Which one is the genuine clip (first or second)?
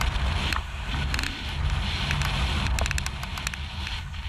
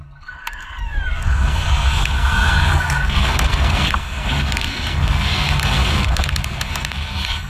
first